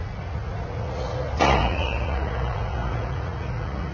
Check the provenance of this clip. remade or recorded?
remade